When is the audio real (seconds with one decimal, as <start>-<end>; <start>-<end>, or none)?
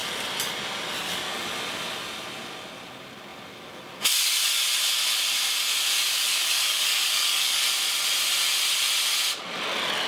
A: 0.0-6.1; 7.6-10.1